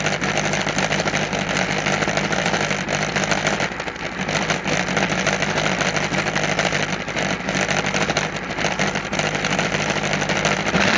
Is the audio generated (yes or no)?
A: no